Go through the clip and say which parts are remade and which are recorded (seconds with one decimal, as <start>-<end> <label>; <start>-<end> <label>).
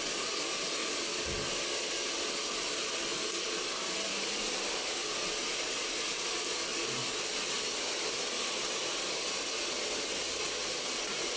0.0-11.4 recorded